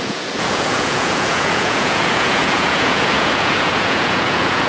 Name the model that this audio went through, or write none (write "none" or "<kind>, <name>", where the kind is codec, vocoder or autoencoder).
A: vocoder, Vocos